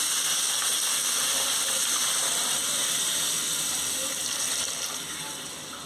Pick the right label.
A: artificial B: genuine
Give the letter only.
B